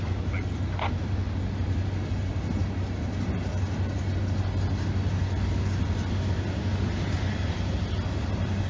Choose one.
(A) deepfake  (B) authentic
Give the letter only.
B